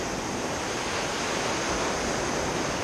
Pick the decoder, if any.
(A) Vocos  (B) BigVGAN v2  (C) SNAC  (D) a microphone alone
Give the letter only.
D